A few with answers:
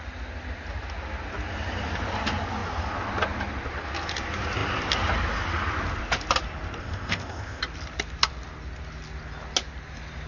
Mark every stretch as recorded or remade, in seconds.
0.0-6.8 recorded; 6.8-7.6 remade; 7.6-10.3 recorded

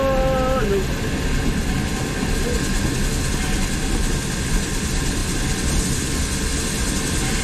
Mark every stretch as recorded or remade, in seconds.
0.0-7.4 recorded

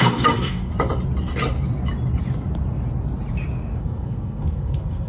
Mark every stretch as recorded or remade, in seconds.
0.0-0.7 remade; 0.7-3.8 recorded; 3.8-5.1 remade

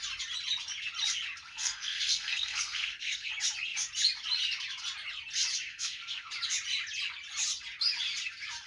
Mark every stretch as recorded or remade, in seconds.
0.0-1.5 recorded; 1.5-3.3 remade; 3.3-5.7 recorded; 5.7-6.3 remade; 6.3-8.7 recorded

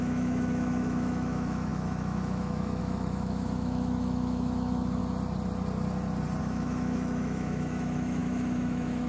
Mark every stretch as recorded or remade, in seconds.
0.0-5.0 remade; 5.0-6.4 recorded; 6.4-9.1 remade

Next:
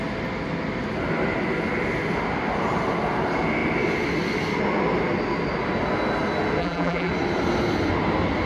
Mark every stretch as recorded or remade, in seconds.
0.0-6.6 recorded; 6.6-7.1 remade; 7.1-8.5 recorded

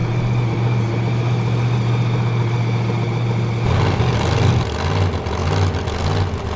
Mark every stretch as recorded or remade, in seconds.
0.0-6.6 recorded

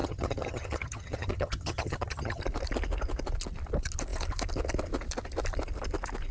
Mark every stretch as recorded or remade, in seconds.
0.0-2.4 remade; 2.4-6.3 recorded